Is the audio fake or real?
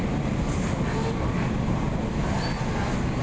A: real